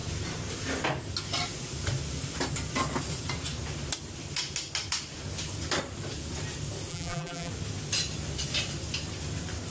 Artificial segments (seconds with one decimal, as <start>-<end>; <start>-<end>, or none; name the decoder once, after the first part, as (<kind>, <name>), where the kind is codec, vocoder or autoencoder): 6.9-7.5 (vocoder, BigVGAN v2)